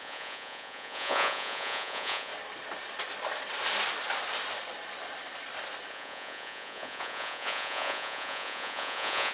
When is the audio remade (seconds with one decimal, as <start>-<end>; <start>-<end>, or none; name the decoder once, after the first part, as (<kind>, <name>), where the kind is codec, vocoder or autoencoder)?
0.0-2.3 (vocoder, Vocos); 5.9-9.3